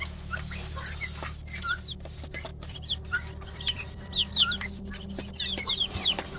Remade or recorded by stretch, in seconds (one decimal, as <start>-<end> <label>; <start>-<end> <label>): 0.0-2.5 recorded; 2.5-4.9 remade; 4.9-6.4 recorded